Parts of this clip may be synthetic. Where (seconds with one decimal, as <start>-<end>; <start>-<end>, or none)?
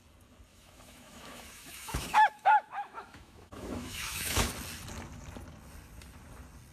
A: 0.5-4.5